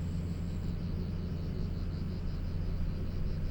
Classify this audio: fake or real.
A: real